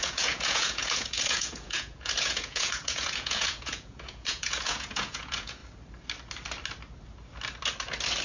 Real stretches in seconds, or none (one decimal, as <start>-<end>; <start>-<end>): 5.6-8.2